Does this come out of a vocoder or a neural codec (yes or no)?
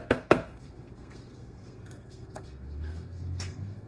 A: yes